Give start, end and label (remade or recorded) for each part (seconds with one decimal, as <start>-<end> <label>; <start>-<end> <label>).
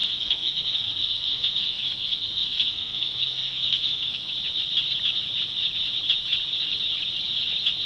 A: 0.0-4.3 remade; 4.3-7.9 recorded